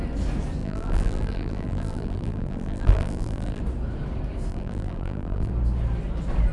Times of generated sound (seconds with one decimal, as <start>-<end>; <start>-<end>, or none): 0.6-3.6; 4.5-5.5

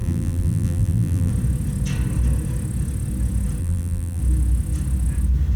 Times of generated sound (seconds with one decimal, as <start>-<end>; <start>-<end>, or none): 0.0-1.3; 3.6-4.2

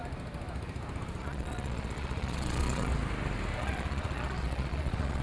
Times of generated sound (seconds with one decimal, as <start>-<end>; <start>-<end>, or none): 1.2-2.9; 3.6-5.2

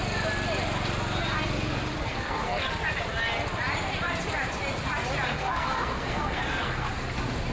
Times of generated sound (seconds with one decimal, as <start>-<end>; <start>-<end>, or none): 2.1-2.7; 5.3-6.9